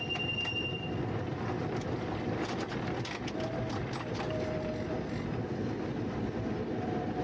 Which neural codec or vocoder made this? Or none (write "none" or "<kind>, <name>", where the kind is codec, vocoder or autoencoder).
none